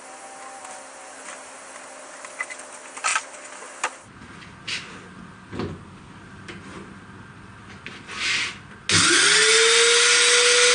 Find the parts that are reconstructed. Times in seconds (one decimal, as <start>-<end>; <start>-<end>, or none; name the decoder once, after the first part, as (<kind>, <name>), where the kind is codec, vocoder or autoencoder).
none